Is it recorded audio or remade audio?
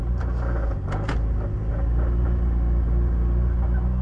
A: recorded